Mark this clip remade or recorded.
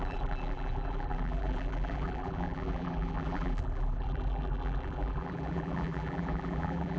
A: remade